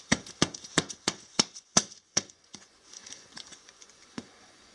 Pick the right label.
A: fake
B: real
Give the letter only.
A